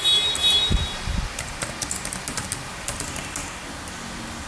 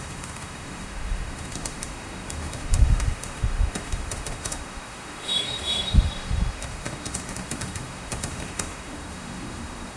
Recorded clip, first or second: first